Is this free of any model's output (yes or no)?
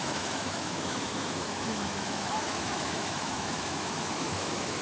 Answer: no